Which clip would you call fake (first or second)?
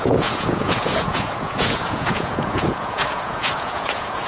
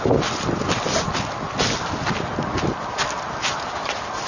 first